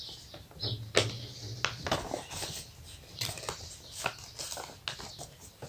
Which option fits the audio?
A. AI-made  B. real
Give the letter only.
B